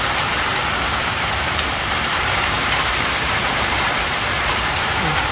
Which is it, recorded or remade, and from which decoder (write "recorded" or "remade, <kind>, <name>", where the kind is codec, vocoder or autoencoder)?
remade, vocoder, BigVGAN v2